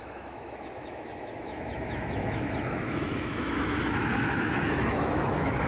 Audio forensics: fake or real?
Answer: fake